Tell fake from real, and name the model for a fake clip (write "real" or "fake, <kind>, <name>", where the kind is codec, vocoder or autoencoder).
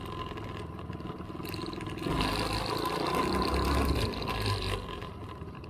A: real